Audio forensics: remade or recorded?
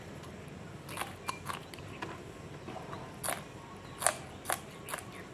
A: recorded